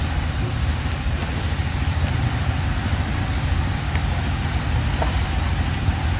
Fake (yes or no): no